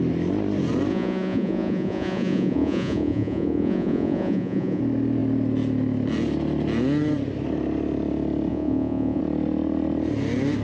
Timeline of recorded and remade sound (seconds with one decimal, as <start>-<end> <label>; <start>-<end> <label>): 0.0-0.9 recorded; 0.9-4.8 remade; 4.8-8.5 recorded; 8.5-9.2 remade; 9.2-10.6 recorded